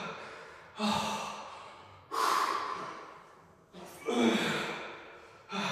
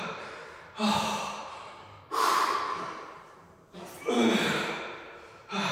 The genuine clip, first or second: first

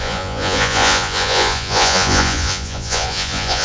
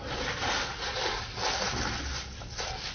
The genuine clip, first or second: second